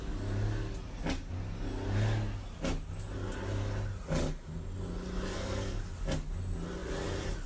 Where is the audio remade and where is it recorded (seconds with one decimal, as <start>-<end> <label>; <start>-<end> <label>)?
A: 0.0-5.3 recorded; 5.3-5.8 remade; 5.8-7.5 recorded